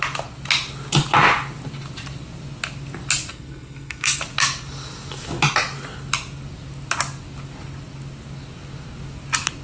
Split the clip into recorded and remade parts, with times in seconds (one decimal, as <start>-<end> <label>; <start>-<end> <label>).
0.0-3.3 recorded; 3.3-4.2 remade; 4.2-9.6 recorded